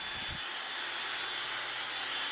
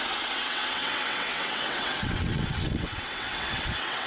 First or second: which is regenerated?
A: second